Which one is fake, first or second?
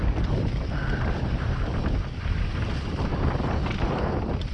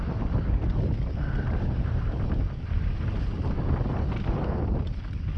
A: first